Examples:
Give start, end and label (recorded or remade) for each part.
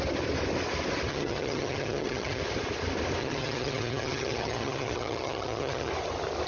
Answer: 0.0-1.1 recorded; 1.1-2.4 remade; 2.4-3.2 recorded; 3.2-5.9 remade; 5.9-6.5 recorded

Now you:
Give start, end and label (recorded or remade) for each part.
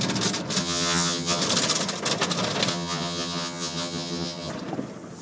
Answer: 0.0-0.6 recorded; 0.6-1.4 remade; 1.4-2.7 recorded; 2.7-4.5 remade; 4.5-5.2 recorded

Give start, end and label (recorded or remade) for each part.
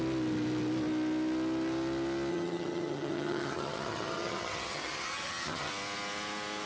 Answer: 0.0-2.3 recorded; 2.3-5.7 remade; 5.7-6.7 recorded